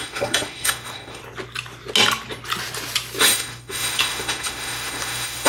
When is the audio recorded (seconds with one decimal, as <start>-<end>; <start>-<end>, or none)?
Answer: 1.2-3.2